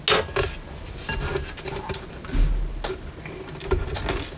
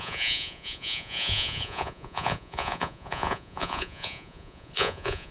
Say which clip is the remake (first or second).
second